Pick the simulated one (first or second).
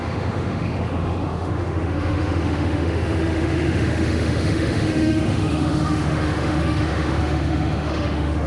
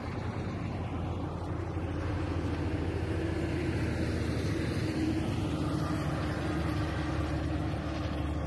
first